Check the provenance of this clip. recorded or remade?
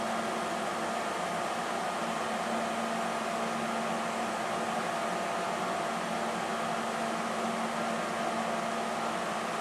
recorded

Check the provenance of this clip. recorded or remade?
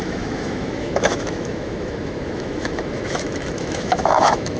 remade